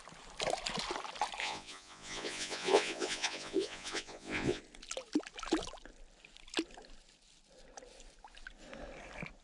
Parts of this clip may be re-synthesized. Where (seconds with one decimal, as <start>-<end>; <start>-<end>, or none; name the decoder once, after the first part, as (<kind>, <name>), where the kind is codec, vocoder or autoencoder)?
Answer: 1.4-4.6 (vocoder, Vocos)